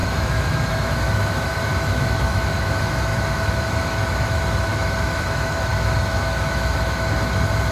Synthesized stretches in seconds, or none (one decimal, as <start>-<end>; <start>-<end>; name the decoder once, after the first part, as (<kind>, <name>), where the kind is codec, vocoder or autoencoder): 0.0-7.7 (autoencoder, DAC-VAE)